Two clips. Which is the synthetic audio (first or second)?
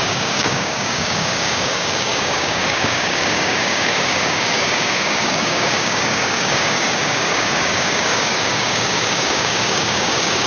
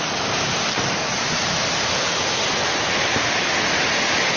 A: first